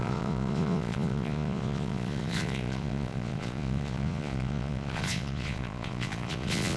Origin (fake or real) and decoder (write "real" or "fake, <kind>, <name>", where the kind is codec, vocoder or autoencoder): fake, vocoder, Vocos